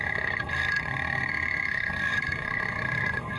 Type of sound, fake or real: fake